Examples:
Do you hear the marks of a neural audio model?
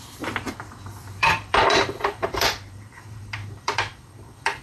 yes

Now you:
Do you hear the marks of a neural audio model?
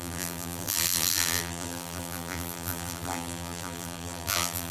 yes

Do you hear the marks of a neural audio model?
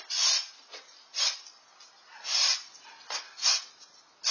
yes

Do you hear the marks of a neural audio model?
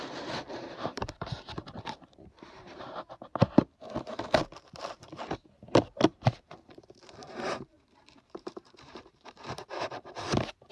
yes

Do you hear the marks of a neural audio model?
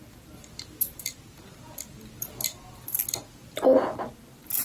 no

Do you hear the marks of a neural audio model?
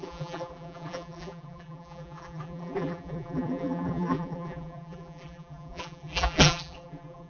yes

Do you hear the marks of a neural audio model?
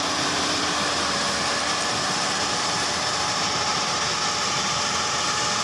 yes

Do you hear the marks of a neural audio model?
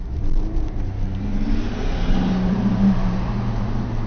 yes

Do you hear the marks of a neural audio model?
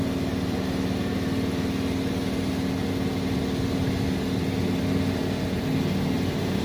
no